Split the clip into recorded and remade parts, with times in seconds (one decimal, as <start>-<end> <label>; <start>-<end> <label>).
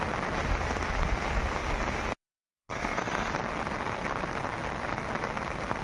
0.0-2.5 recorded; 2.5-3.3 remade; 3.3-5.8 recorded